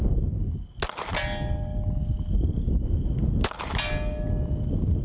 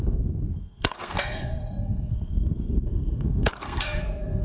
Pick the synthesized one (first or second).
second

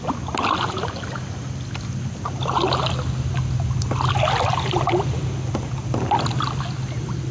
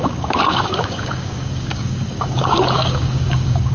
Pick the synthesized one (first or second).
second